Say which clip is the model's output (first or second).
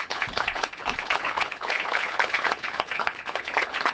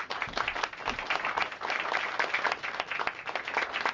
first